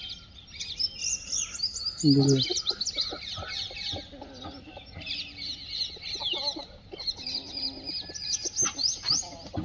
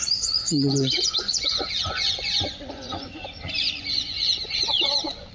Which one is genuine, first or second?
first